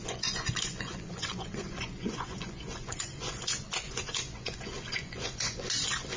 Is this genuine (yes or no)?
no